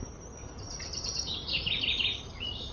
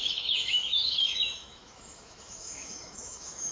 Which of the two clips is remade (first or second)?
second